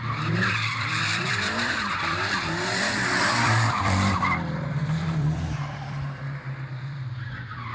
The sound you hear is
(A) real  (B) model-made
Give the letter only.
B